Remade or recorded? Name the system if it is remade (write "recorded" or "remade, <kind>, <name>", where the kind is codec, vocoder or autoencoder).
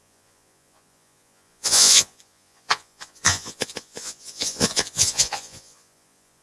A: remade, vocoder, Vocos